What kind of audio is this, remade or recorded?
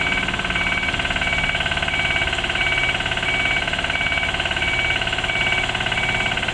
recorded